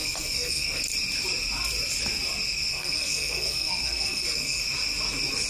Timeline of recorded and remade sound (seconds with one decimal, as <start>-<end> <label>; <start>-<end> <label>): 0.0-0.8 remade; 0.8-2.7 recorded; 2.7-4.6 remade; 4.6-5.5 recorded